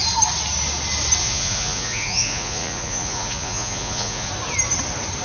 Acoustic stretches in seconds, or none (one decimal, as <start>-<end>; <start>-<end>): 0.0-1.2; 4.3-5.2